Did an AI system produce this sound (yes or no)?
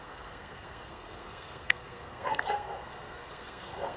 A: yes